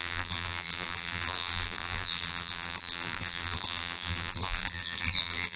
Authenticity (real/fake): fake